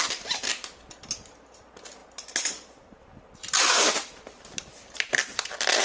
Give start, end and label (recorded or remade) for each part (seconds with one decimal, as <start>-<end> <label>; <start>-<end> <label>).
0.0-5.8 recorded